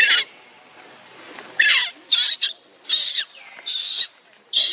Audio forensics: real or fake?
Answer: real